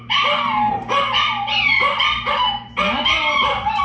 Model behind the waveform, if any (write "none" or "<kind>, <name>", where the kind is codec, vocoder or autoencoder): none